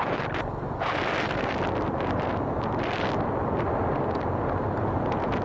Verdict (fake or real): real